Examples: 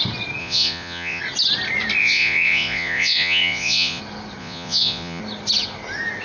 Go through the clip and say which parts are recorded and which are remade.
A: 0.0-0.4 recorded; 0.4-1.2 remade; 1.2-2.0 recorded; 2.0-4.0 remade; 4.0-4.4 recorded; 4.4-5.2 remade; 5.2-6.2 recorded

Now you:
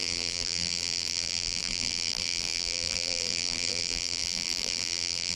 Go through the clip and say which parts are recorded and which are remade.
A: 0.0-5.4 remade

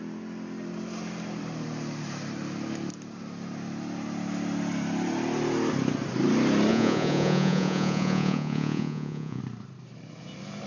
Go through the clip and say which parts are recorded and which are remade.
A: 0.0-6.7 recorded; 6.7-9.4 remade; 9.4-10.7 recorded

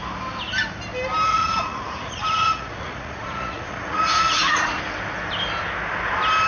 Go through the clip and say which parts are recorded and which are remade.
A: 0.0-1.3 recorded; 1.3-4.8 remade; 4.8-6.5 recorded

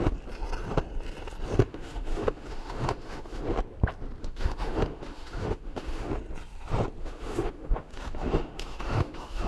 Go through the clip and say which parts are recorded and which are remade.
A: 0.0-1.7 recorded; 1.7-3.4 remade; 3.4-4.2 recorded; 4.2-6.1 remade; 6.1-7.0 recorded; 7.0-9.5 remade

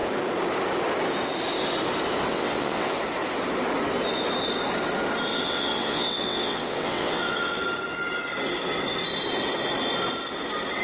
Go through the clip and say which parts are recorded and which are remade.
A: 0.0-2.3 recorded; 2.3-3.0 remade; 3.0-5.3 recorded; 5.3-7.6 remade; 7.6-10.8 recorded

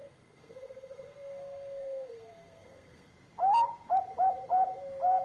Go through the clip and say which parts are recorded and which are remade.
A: 0.0-3.1 remade; 3.1-5.2 recorded

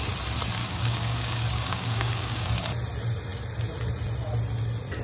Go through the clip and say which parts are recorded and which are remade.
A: 0.0-0.6 recorded; 0.6-2.5 remade; 2.5-5.0 recorded